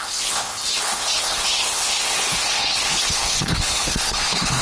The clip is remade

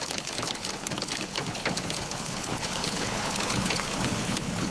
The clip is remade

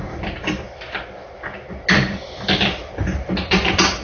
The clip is recorded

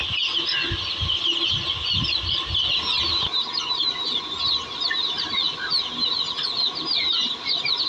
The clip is recorded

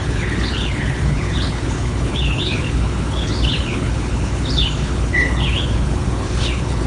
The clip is remade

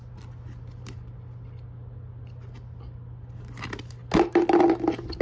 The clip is recorded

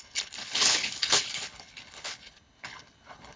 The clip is remade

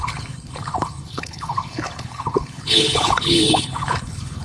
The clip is remade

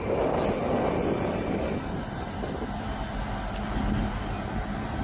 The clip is recorded